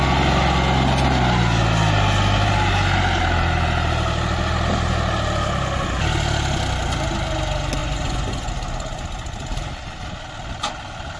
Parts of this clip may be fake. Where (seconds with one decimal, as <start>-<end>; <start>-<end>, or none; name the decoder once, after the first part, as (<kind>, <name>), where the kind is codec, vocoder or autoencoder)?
7.8-8.5 (vocoder, Vocos)